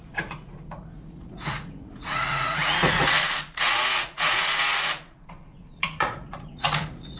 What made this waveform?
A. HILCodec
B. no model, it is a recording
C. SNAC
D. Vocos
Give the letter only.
D